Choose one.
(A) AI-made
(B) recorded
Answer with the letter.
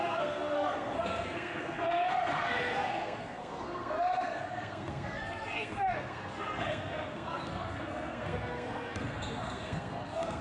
A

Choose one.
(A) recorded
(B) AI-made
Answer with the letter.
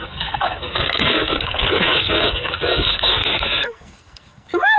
B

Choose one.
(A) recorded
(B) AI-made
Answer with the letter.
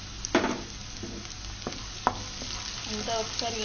A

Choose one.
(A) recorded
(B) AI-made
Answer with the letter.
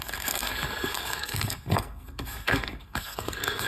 B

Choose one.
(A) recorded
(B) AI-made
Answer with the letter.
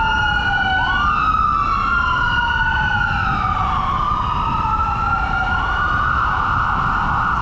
A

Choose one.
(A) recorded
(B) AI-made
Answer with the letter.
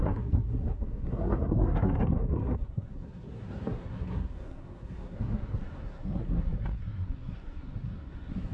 B